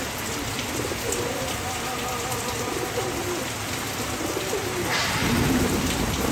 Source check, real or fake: fake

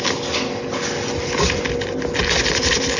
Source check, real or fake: real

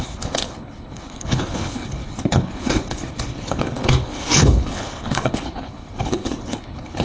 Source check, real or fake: fake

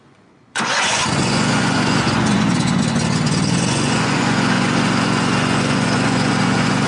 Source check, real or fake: fake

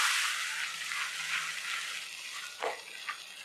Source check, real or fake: real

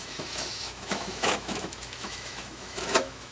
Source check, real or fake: fake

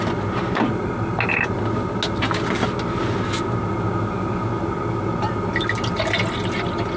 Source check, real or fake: real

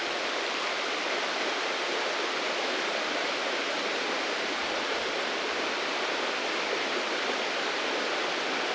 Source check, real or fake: real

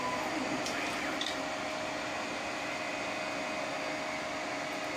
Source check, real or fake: real